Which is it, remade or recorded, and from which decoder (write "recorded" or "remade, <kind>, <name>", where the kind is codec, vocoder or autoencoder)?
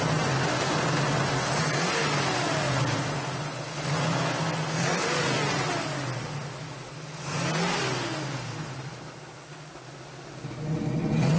recorded